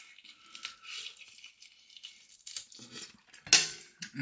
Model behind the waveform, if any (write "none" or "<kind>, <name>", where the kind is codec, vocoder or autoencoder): none